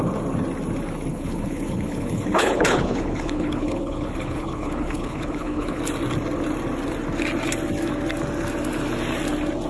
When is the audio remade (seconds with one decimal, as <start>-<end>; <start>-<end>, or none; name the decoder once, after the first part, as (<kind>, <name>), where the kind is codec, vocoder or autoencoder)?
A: 1.1-5.8 (codec, HILCodec)